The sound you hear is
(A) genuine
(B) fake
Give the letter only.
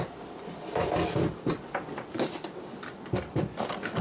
A